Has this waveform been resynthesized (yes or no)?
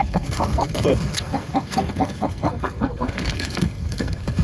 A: yes